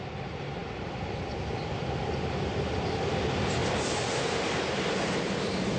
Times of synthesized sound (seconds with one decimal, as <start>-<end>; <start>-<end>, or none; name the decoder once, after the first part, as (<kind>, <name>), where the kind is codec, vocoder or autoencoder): 0.0-3.6 (vocoder, BigVGAN v2); 5.2-5.8